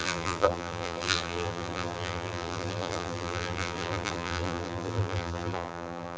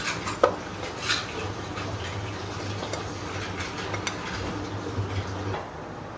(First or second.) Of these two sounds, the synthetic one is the first